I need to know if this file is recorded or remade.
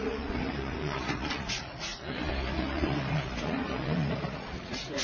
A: remade